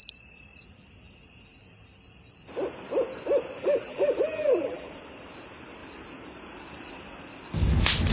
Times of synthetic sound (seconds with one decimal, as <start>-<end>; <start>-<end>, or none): 3.6-4.9